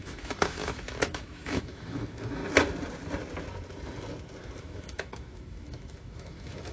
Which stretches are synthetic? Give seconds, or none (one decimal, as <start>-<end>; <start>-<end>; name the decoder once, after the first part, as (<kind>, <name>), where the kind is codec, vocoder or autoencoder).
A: 0.0-2.4 (autoencoder, DAC-VAE); 4.6-6.7